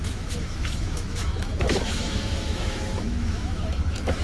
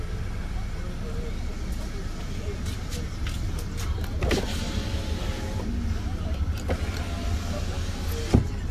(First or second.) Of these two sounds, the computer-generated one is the first